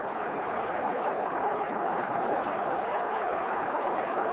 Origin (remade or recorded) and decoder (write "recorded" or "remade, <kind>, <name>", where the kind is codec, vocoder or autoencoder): remade, codec, HILCodec